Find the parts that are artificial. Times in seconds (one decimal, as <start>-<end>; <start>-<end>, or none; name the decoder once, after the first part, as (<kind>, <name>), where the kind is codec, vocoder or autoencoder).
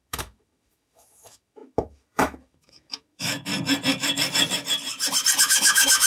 0.0-3.5 (autoencoder, DAC-VAE); 5.4-6.1